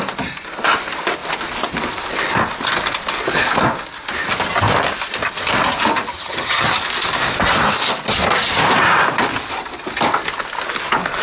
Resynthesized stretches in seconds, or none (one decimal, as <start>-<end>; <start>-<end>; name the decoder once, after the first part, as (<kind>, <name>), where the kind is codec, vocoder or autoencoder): 6.1-6.8 (vocoder, HiFi-GAN)